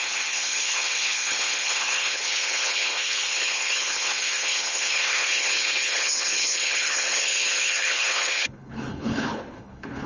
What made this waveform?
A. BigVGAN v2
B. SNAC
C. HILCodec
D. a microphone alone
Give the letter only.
C